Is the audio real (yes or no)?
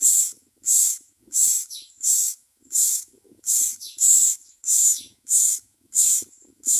no